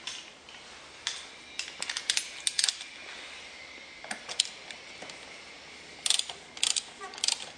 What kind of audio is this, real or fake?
real